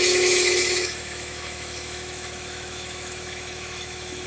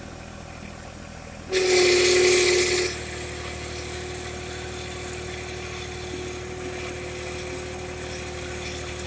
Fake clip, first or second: first